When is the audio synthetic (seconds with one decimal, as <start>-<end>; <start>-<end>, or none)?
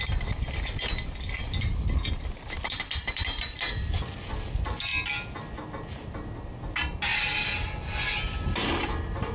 none